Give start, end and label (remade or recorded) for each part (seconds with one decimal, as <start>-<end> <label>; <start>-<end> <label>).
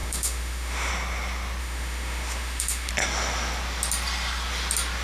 0.0-0.9 remade; 0.9-1.6 recorded; 1.6-2.9 remade; 2.9-5.0 recorded